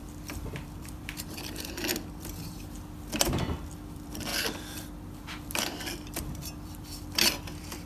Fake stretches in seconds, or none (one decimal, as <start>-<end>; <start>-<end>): 0.0-4.3; 5.2-7.9